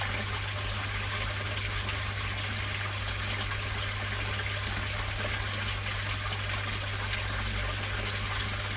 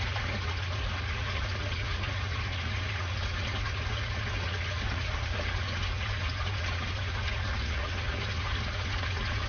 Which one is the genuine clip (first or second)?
first